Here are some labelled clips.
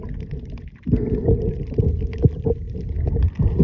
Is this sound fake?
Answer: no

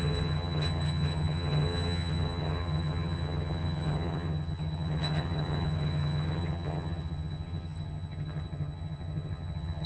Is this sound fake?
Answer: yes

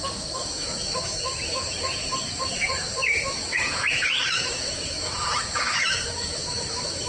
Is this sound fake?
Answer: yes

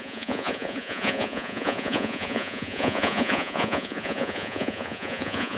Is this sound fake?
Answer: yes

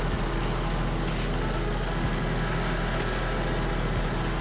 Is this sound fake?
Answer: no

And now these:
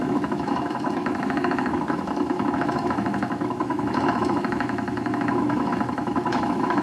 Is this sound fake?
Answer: yes